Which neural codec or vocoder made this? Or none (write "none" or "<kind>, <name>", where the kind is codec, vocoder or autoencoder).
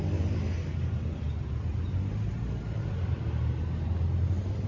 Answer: none